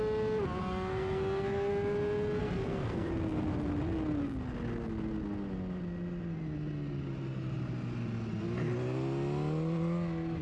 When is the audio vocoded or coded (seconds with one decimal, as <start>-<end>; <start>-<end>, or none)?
0.6-1.7; 2.4-3.1